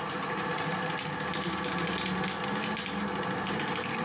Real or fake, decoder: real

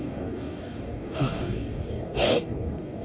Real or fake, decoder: fake, codec, DAC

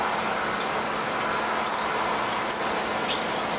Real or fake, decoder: real